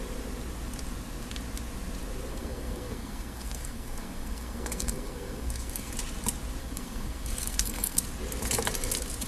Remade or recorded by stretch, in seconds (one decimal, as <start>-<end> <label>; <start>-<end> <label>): 0.0-2.3 recorded; 2.3-5.9 remade; 5.9-6.6 recorded; 6.6-8.0 remade; 8.0-9.3 recorded